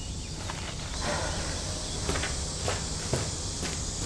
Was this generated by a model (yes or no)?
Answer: no